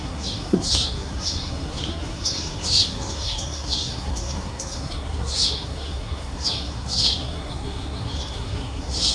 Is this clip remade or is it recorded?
remade